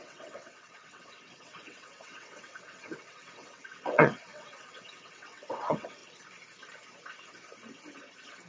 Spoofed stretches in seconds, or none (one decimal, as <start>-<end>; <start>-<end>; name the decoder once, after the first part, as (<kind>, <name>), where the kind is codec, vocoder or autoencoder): 0.0-6.0 (vocoder, WaveNeXt)